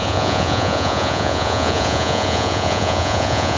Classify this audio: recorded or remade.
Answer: remade